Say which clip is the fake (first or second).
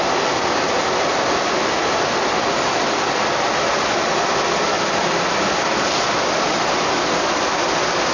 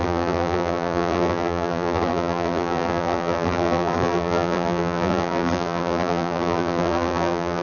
second